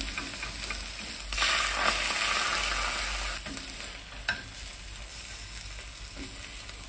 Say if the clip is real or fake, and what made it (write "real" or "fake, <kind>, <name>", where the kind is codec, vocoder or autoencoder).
real